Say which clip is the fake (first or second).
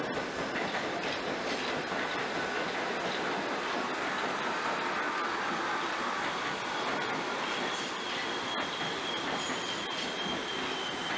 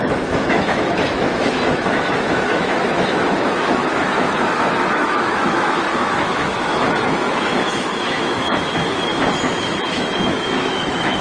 second